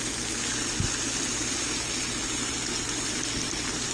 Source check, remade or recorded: recorded